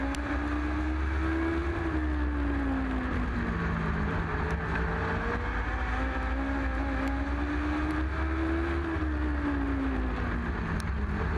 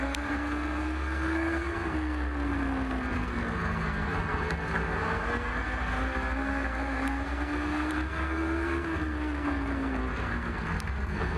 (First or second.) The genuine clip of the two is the first